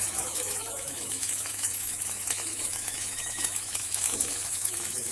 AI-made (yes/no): yes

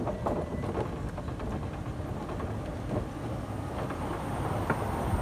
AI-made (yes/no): no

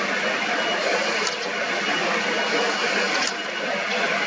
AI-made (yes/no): no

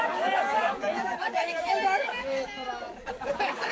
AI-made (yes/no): yes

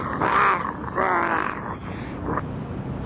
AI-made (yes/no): no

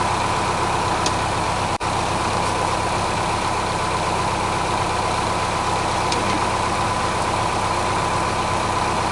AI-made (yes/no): no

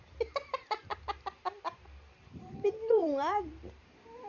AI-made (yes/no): yes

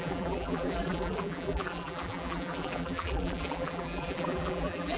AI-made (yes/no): yes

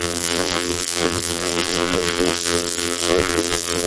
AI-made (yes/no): yes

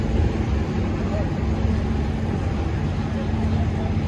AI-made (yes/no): no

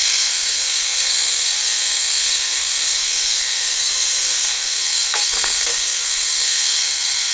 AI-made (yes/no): yes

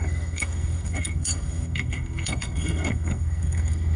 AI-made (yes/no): yes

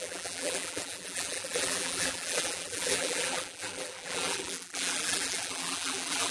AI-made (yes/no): yes